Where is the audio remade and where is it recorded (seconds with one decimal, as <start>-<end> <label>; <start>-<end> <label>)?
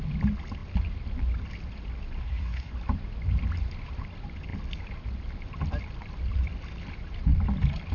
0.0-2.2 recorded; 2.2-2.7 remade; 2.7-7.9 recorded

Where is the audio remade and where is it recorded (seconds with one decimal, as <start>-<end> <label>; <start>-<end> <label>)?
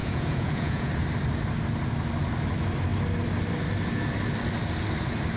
0.0-0.9 remade; 0.9-5.4 recorded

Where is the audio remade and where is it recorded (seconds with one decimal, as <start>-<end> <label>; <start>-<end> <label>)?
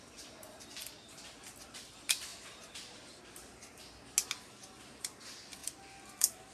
0.0-2.3 remade; 2.3-4.9 recorded; 4.9-6.5 remade